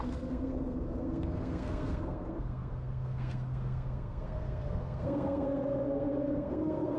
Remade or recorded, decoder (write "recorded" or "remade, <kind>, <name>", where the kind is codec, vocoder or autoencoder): remade, codec, SNAC